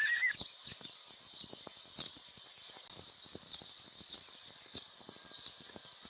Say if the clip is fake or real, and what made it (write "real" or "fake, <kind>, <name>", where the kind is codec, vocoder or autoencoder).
real